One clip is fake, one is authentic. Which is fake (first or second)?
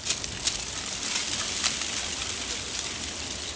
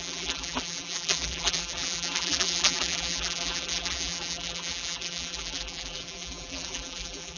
second